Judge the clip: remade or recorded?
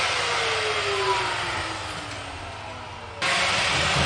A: recorded